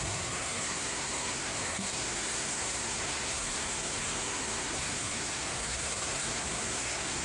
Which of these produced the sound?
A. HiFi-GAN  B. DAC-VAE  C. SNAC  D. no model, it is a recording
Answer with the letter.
C